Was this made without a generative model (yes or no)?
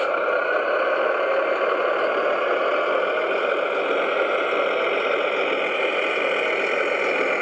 yes